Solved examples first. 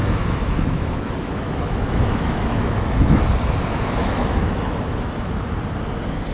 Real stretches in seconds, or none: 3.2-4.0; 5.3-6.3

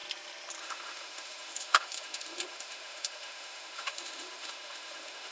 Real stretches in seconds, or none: 0.0-0.6

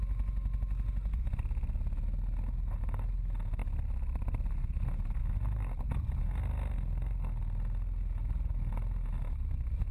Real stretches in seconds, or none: 0.0-9.9

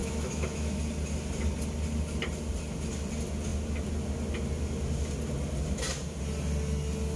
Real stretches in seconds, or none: 0.8-7.2

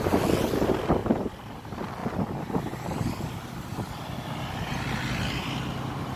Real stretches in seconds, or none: 0.0-6.2